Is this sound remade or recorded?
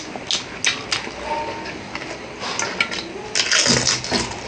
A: recorded